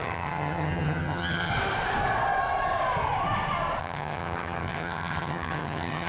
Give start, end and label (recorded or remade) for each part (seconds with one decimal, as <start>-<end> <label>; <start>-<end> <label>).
0.0-1.5 remade; 1.5-3.8 recorded; 3.8-6.1 remade